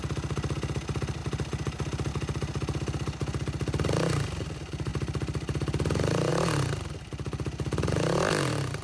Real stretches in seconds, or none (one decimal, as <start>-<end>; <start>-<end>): 0.0-8.8